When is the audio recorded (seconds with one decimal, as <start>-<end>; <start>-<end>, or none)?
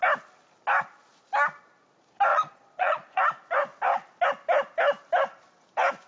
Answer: 0.0-2.3; 3.2-6.1